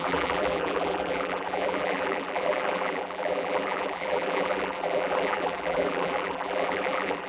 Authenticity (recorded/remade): remade